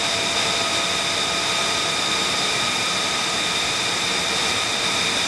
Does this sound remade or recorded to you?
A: recorded